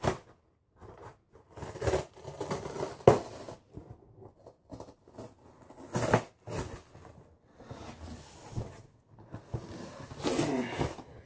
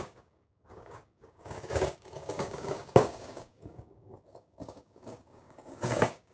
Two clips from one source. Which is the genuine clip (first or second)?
first